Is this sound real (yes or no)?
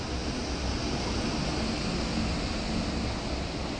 yes